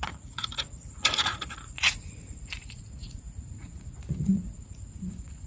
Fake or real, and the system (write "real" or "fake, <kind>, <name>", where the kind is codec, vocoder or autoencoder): fake, vocoder, Vocos